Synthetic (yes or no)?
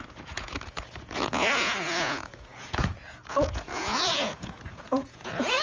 yes